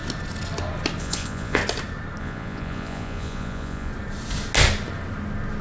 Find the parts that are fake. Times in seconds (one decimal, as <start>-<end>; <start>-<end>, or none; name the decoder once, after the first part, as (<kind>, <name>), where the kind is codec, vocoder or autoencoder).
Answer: 1.0-1.6 (vocoder, Vocos); 2.2-3.9